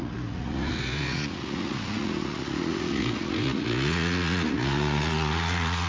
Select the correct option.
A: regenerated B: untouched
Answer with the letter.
A